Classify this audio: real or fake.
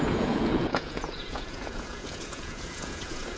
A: fake